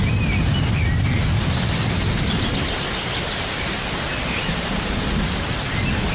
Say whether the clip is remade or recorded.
recorded